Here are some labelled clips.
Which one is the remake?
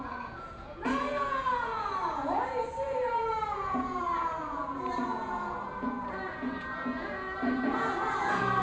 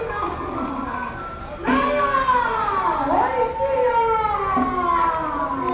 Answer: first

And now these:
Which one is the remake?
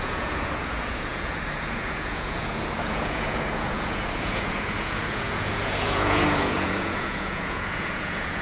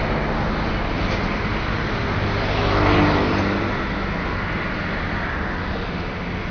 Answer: first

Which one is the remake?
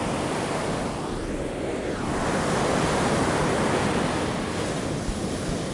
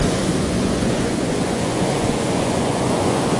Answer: second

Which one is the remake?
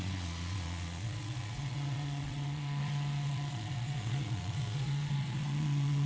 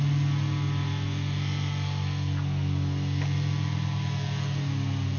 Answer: first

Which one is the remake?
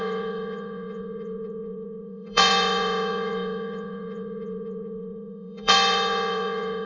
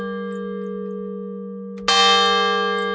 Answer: first